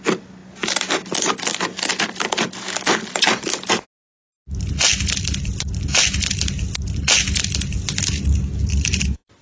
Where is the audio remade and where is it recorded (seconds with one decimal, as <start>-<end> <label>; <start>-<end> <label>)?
0.0-9.4 recorded